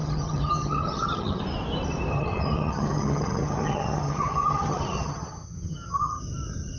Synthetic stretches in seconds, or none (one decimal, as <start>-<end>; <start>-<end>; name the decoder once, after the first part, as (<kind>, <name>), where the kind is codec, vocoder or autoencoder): 0.0-1.4 (vocoder, HiFi-GAN); 2.1-6.2